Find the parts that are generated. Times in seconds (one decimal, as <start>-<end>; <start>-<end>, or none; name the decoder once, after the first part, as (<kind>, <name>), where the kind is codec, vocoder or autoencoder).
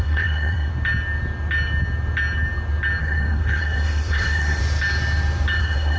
0.0-0.7 (codec, SNAC); 3.0-4.6; 5.6-6.0